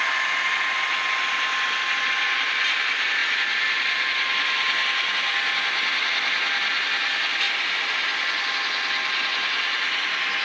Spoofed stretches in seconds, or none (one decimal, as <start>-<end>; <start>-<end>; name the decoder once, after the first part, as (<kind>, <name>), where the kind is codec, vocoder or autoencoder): none

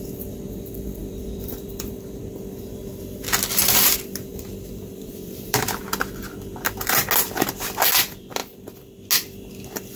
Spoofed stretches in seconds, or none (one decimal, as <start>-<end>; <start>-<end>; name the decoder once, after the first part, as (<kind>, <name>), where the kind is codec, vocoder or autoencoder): 1.0-2.2 (vocoder, BigVGAN v2); 4.3-5.8

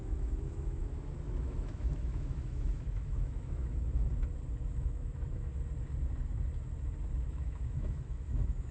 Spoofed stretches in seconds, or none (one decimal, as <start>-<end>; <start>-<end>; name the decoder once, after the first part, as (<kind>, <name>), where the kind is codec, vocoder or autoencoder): 0.0-4.1 (autoencoder, DAC-VAE); 4.7-5.5; 7.2-8.7

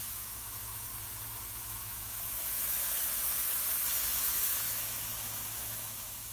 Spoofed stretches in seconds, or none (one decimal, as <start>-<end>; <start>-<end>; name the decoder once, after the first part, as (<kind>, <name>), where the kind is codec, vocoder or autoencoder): 0.0-0.9 (autoencoder, DAC-VAE); 1.5-3.5; 4.2-6.3

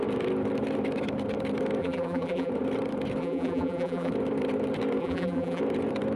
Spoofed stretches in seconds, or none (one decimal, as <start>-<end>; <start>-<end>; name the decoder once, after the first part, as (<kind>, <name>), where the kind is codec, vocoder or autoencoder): 1.8-2.5 (vocoder, BigVGAN v2); 3.2-4.1; 5.0-5.6